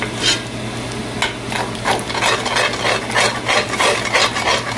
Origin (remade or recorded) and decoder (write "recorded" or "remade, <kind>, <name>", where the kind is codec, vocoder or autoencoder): recorded